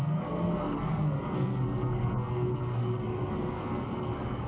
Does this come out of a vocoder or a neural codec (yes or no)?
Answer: yes